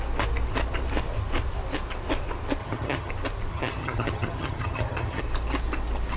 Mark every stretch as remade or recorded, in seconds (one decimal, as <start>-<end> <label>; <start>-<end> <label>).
0.0-2.6 recorded; 2.6-3.1 remade; 3.1-3.5 recorded; 3.5-5.2 remade; 5.2-6.2 recorded